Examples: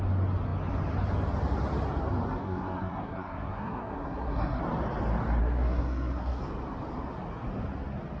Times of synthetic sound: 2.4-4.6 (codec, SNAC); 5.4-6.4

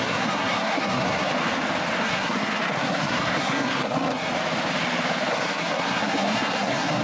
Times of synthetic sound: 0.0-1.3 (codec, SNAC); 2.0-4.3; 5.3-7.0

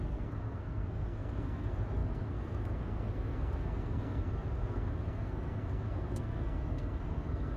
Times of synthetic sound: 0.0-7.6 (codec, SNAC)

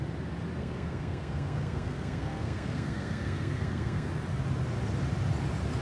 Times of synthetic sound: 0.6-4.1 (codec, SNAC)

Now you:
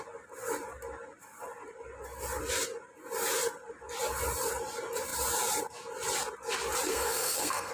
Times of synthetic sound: 6.9-7.7 (codec, SNAC)